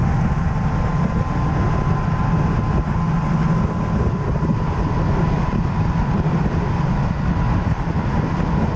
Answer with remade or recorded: recorded